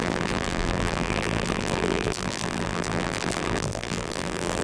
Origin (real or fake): fake